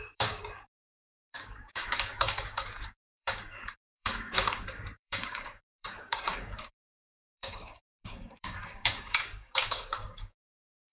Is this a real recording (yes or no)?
no